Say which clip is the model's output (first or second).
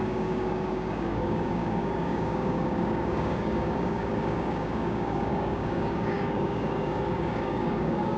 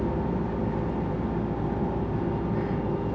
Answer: first